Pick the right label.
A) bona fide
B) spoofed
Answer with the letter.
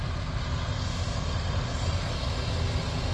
A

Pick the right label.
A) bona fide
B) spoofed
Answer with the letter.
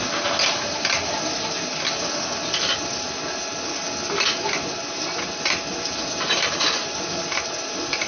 A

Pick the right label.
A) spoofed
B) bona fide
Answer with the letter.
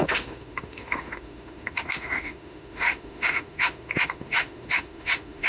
A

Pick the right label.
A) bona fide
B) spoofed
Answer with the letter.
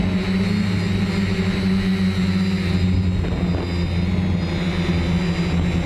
A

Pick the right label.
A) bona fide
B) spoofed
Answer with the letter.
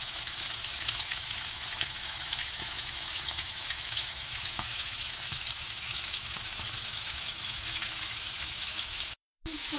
B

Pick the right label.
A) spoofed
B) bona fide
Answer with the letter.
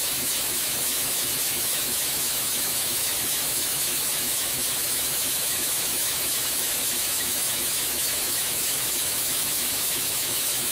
A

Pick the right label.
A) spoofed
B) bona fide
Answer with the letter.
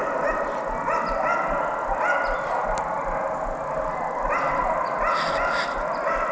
B